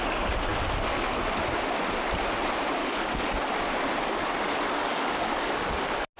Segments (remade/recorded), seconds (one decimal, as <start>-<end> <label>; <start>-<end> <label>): 0.0-2.8 recorded; 2.8-3.4 remade; 3.4-4.8 recorded; 4.8-5.5 remade; 5.5-6.2 recorded